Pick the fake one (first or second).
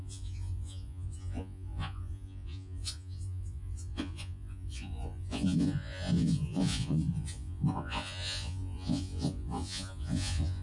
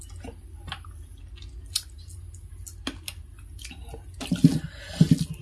first